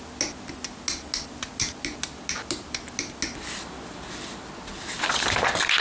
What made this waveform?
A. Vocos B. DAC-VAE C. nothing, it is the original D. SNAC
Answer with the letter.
C